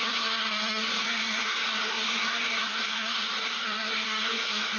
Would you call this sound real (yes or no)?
no